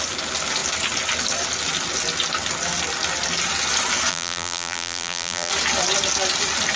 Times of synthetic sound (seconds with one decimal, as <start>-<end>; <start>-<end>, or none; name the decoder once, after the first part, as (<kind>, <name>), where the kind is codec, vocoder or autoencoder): 4.1-5.5 (vocoder, BigVGAN v2)

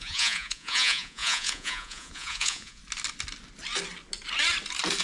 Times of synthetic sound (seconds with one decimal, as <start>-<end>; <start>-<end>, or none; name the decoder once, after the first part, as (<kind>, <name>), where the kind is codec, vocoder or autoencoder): 0.0-2.8 (vocoder, Vocos)

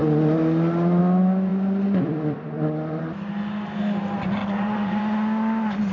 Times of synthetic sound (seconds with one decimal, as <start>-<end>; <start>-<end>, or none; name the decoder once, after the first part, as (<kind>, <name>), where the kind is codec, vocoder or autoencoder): 4.4-5.0 (vocoder, WaveNeXt)

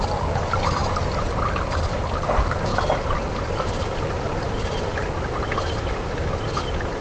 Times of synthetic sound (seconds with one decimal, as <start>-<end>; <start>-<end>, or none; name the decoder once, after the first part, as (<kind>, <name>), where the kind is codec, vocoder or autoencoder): none